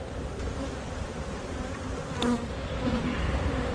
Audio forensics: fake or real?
real